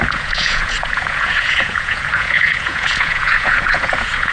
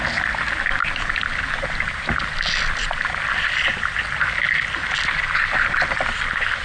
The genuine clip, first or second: second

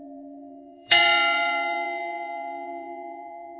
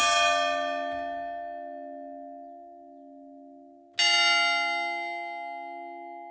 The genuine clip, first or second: second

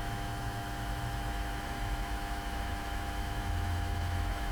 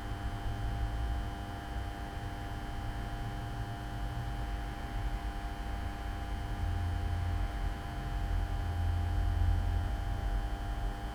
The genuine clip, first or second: second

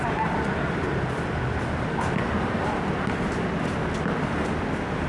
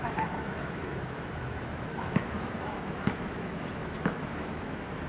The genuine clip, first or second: first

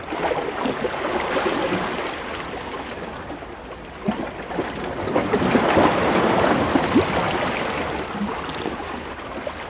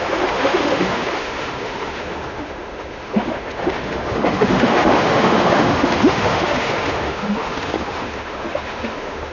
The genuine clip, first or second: first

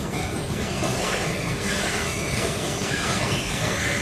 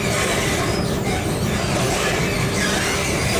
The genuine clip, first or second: second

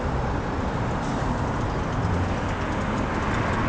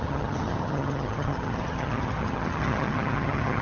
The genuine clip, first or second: first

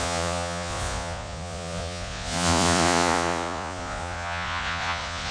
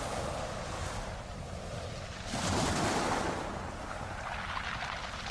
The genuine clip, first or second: second